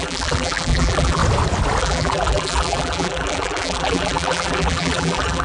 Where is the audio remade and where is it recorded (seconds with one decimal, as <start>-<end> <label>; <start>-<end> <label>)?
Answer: 0.0-1.2 remade; 1.2-1.8 recorded; 1.8-5.4 remade